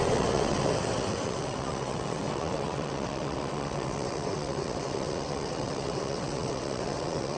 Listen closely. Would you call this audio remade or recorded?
remade